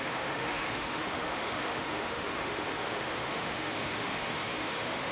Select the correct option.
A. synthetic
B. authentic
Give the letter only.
A